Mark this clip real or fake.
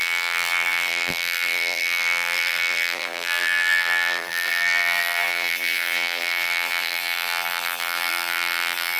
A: fake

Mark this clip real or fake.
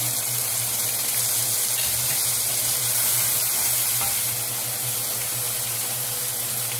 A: fake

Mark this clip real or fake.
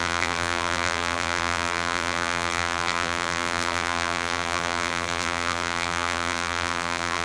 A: fake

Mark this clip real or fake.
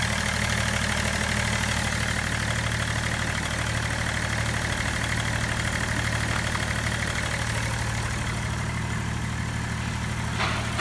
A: real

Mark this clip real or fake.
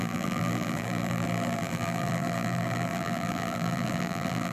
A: fake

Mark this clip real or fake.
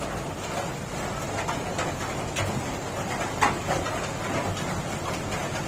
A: real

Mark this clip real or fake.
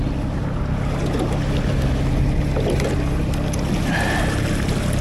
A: real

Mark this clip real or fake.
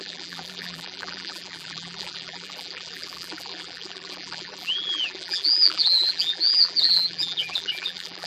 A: fake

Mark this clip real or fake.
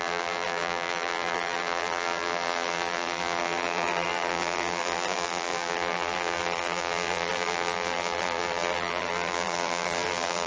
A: fake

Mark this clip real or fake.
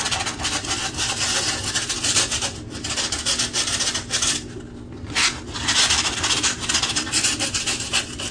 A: real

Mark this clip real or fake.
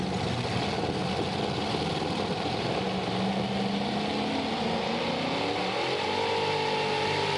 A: real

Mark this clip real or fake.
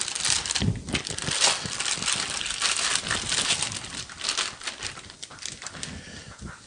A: real